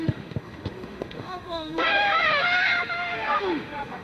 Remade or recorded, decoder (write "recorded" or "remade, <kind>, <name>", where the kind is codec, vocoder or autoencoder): remade, autoencoder, DAC-VAE